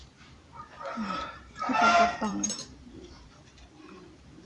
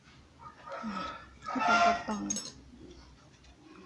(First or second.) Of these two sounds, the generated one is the first